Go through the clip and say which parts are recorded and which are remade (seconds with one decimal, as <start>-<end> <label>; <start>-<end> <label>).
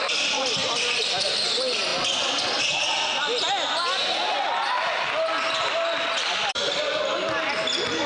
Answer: 0.0-1.9 remade; 1.9-6.0 recorded; 6.0-8.1 remade